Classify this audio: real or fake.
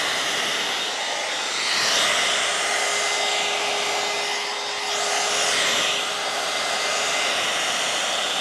real